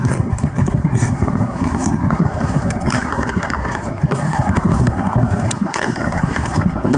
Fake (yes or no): yes